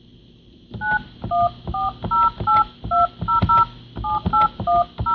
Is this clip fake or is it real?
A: real